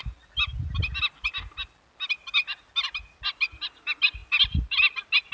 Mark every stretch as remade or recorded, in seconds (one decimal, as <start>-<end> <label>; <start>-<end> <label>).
0.0-5.3 recorded